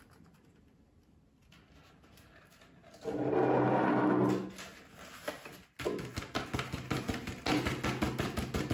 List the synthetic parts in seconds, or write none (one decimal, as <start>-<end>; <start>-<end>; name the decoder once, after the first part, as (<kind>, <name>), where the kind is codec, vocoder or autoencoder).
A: none